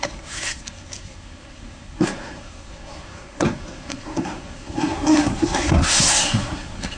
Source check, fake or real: fake